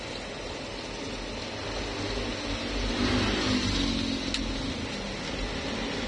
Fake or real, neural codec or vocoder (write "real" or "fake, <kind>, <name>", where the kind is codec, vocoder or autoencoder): real